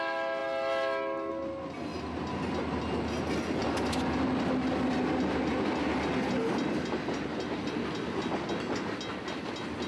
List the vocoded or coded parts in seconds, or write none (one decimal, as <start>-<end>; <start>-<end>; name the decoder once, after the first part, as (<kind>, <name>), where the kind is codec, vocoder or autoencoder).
none